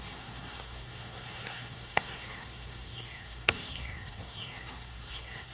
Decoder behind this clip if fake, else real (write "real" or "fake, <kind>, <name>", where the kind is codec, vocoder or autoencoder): fake, codec, SNAC